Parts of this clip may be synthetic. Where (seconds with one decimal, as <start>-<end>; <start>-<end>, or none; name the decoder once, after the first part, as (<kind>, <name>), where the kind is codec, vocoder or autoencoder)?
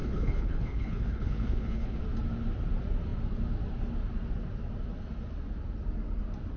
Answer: 0.0-2.0 (codec, HILCodec)